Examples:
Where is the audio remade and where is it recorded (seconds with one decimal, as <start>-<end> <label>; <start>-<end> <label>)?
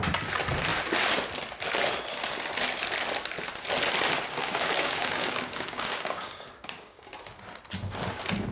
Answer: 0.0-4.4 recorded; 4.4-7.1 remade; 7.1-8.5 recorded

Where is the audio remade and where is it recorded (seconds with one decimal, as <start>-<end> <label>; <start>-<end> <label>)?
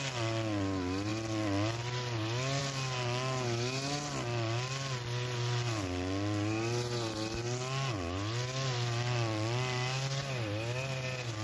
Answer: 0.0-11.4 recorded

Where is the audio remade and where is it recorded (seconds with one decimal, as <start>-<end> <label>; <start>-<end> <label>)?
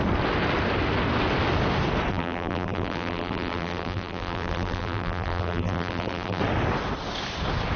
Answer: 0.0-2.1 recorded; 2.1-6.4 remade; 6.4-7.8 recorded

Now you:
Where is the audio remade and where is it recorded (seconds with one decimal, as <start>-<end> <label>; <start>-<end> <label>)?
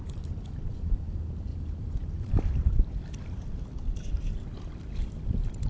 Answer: 0.0-1.5 recorded; 1.5-3.0 remade; 3.0-5.7 recorded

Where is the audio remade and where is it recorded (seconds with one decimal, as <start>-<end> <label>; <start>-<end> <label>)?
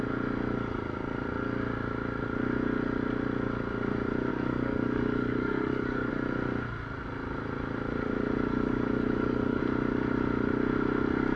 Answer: 0.0-4.3 recorded; 4.3-6.1 remade; 6.1-8.5 recorded; 8.5-9.6 remade; 9.6-11.4 recorded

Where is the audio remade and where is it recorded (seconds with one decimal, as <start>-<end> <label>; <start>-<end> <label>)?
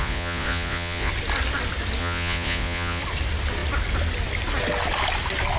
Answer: 0.0-1.1 remade; 1.1-2.0 recorded; 2.0-3.0 remade; 3.0-5.6 recorded